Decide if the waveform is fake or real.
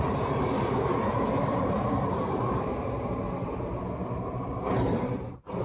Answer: fake